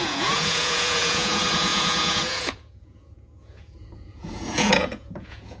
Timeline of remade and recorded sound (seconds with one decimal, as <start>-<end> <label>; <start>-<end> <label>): 0.0-5.6 remade